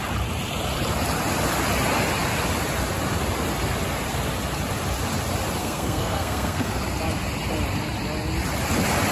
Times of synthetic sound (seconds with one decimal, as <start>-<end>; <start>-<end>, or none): 5.6-6.7